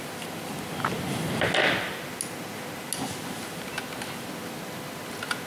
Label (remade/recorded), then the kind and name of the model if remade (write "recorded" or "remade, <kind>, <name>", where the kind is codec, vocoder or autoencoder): recorded